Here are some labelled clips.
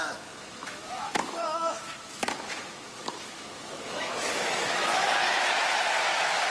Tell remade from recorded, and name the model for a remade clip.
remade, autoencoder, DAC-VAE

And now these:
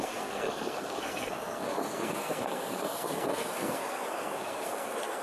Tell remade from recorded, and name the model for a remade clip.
remade, codec, SNAC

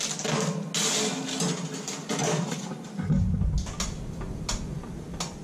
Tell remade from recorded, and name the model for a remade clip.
recorded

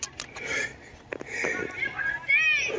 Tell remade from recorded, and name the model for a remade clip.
recorded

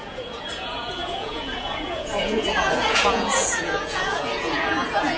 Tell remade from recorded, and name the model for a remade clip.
remade, vocoder, Vocos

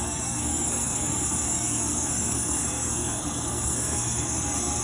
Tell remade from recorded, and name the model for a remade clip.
remade, codec, SNAC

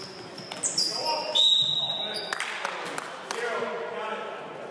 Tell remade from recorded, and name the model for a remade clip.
recorded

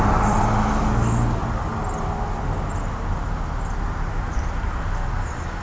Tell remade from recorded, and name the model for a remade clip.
recorded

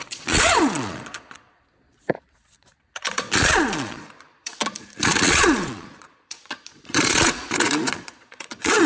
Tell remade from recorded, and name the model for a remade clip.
remade, vocoder, Vocos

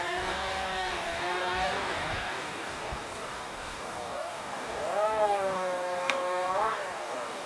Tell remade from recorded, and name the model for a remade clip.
remade, codec, DAC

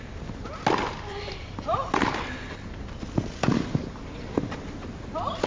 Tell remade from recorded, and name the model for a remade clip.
recorded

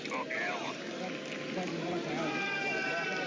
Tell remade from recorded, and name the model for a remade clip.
recorded